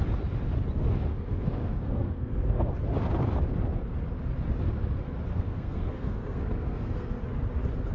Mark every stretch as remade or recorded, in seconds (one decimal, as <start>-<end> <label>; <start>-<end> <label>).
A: 0.0-1.1 recorded; 1.1-2.7 remade; 2.7-5.3 recorded; 5.3-7.2 remade; 7.2-7.9 recorded